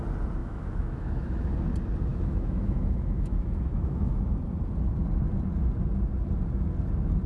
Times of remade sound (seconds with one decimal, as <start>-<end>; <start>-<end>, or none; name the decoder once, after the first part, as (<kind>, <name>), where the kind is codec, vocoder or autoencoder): 0.4-1.5 (autoencoder, DAC-VAE); 2.1-4.2